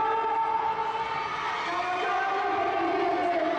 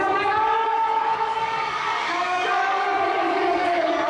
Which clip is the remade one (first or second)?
second